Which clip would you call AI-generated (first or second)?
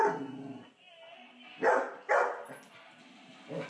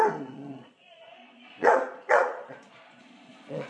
second